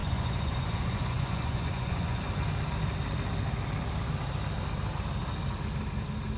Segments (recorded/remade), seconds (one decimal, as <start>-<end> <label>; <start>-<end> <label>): 0.0-2.2 remade; 2.2-6.4 recorded